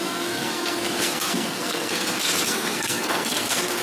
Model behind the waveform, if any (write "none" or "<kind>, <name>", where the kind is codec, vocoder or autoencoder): codec, SNAC